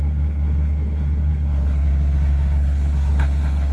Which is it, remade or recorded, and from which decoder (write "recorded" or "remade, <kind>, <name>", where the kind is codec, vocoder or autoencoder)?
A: remade, codec, SNAC